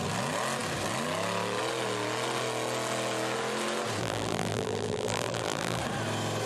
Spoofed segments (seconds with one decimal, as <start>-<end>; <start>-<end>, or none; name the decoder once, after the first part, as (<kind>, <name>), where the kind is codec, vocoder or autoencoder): 4.0-5.8 (vocoder, BigVGAN v2)